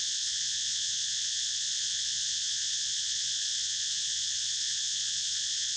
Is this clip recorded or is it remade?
remade